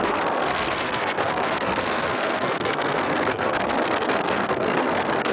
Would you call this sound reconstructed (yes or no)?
yes